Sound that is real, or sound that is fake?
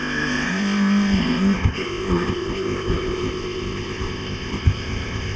fake